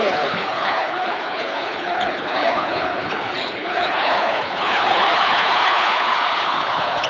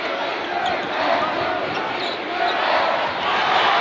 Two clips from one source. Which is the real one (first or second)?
second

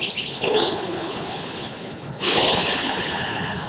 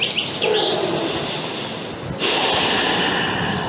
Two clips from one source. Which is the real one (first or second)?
second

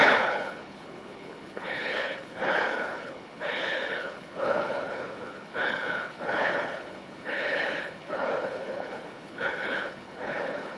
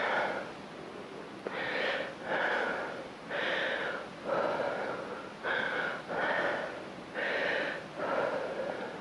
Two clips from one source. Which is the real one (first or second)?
second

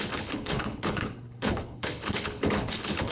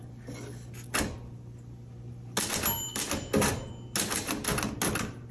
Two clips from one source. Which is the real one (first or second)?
second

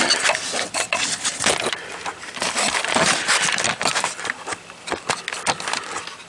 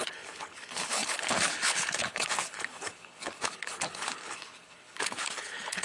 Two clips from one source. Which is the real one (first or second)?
first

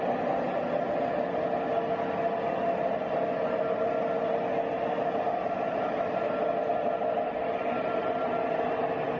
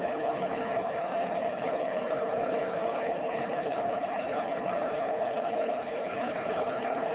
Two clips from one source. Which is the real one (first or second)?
first